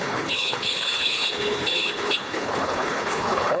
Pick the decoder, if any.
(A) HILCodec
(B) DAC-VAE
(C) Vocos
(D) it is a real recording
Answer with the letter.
A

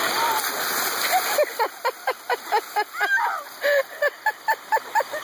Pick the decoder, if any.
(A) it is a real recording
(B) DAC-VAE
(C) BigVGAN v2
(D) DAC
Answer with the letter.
A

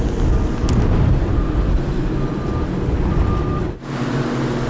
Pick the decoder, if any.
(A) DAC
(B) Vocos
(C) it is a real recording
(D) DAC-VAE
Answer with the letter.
C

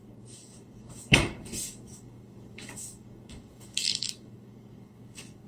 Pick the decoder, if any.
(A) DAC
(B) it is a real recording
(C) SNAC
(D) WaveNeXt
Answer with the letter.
A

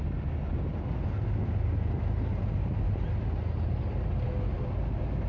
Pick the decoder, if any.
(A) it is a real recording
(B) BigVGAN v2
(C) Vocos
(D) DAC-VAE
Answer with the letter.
A